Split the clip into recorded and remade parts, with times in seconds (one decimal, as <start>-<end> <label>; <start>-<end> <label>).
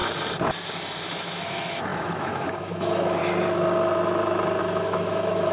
0.0-1.1 recorded; 1.1-3.2 remade; 3.2-4.6 recorded; 4.6-5.5 remade